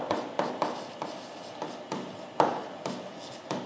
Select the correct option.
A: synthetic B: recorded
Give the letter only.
B